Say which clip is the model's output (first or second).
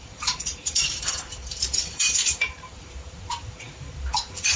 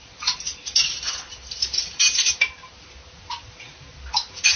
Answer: first